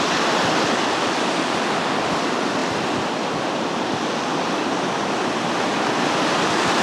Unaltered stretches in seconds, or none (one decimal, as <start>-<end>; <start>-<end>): 0.0-6.8